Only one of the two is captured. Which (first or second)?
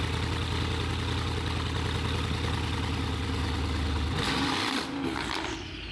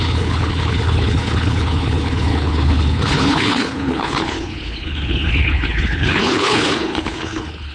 first